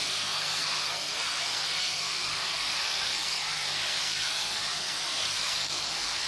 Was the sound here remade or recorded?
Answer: remade